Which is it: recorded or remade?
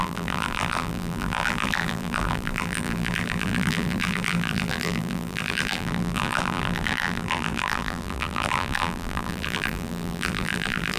remade